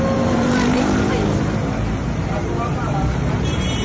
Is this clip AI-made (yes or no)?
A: yes